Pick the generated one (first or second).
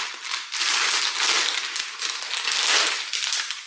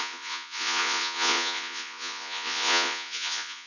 second